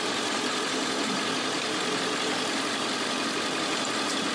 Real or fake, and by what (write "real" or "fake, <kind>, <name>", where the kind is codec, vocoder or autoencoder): fake, vocoder, BigVGAN v2